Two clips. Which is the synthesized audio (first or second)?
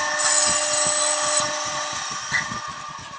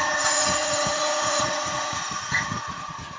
second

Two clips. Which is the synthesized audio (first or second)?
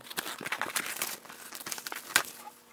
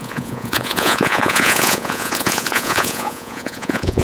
second